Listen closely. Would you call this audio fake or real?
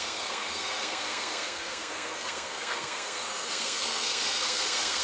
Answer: fake